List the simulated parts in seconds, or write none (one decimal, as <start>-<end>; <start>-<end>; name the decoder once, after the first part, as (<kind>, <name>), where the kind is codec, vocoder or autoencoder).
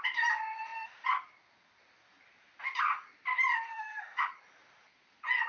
3.7-4.2 (codec, SNAC)